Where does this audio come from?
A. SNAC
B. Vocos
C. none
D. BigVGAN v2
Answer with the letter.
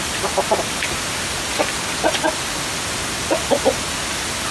C